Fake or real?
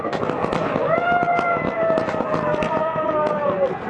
fake